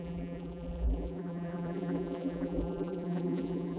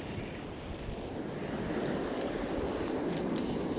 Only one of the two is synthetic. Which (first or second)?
first